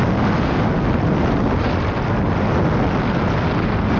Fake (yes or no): no